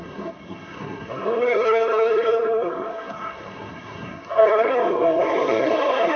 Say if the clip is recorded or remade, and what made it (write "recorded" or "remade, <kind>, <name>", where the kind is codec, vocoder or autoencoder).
remade, codec, SNAC